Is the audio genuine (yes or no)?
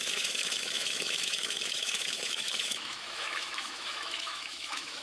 no